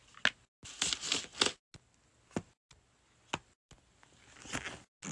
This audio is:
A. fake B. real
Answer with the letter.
B